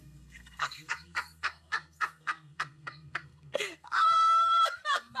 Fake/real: fake